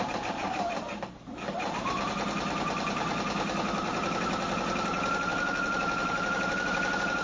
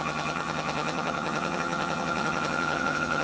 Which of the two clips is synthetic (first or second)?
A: second